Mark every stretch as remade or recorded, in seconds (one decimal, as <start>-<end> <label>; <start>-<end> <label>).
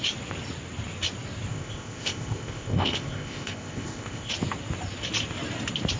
0.0-1.5 recorded; 1.5-4.3 remade; 4.3-6.0 recorded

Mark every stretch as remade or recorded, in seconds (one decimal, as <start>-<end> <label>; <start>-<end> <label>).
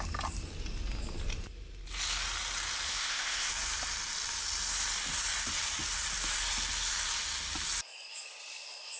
0.0-2.9 recorded; 2.9-3.5 remade; 3.5-9.0 recorded